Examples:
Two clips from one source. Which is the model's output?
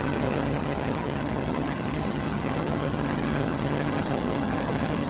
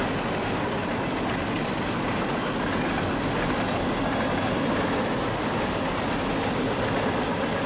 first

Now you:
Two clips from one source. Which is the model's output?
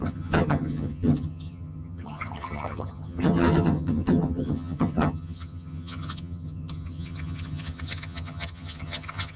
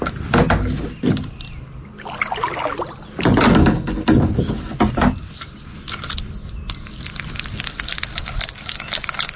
first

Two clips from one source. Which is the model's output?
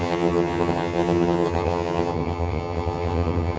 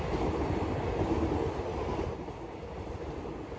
first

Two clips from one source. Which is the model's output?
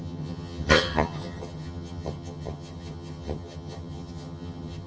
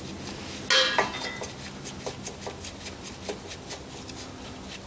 first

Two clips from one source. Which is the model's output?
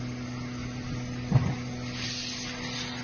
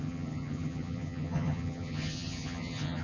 second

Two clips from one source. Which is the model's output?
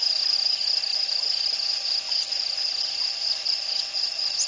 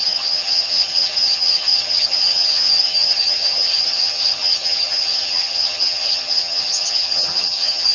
second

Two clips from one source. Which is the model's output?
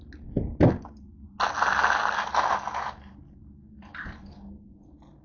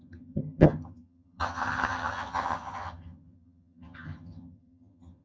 second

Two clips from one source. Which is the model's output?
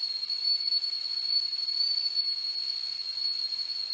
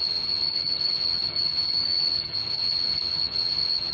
second